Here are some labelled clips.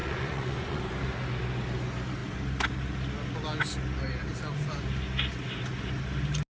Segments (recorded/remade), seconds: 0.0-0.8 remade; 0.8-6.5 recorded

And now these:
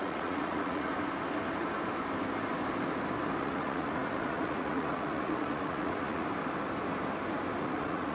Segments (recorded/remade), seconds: 0.0-0.9 remade; 0.9-3.4 recorded; 3.4-6.3 remade; 6.3-7.6 recorded; 7.6-8.1 remade

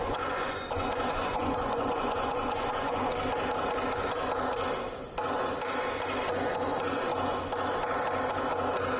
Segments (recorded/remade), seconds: 0.0-3.0 remade; 3.0-6.5 recorded; 6.5-7.1 remade; 7.1-9.0 recorded

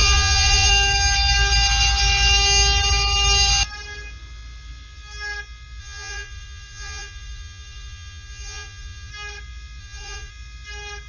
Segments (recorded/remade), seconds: 0.0-0.7 remade; 0.7-5.8 recorded; 5.8-9.1 remade; 9.1-9.8 recorded; 9.8-10.3 remade; 10.3-11.1 recorded

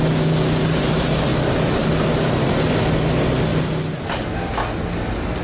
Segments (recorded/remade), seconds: 0.0-5.4 recorded

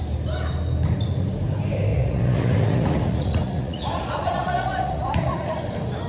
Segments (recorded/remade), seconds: 0.0-1.9 recorded; 1.9-5.6 remade; 5.6-6.1 recorded